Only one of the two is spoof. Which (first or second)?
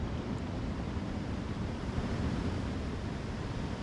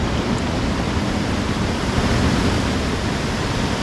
first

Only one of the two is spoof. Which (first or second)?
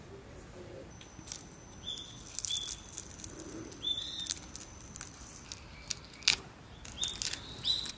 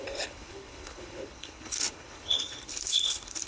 second